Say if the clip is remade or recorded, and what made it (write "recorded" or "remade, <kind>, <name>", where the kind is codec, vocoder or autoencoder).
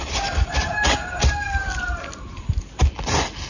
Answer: recorded